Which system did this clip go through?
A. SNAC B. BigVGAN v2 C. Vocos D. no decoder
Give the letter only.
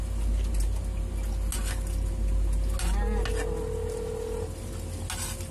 D